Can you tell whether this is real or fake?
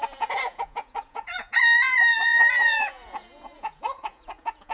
fake